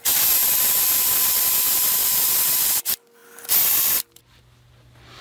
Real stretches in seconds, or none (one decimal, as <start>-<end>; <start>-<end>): 0.0-5.2